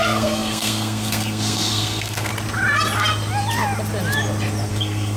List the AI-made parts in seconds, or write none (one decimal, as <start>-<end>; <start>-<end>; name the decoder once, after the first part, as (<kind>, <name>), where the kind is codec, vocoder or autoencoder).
0.0-2.3 (codec, SNAC); 4.7-5.2